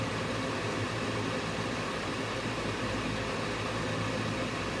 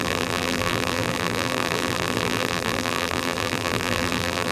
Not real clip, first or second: second